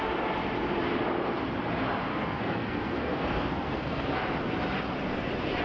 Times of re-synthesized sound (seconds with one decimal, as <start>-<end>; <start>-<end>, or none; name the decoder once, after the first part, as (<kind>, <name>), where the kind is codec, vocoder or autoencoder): 2.1-4.1 (codec, SNAC)